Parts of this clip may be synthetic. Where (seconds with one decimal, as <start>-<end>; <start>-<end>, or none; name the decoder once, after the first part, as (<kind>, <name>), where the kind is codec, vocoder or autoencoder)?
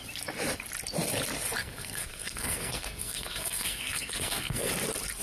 1.6-4.7 (codec, SNAC)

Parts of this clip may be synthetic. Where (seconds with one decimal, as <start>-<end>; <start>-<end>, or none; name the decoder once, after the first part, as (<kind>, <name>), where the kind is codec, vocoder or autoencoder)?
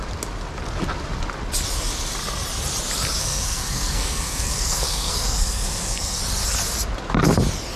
3.2-6.2 (codec, SNAC)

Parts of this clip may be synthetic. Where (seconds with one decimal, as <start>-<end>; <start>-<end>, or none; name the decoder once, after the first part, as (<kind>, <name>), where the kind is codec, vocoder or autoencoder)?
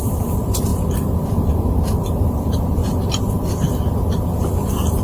0.0-2.8 (vocoder, BigVGAN v2)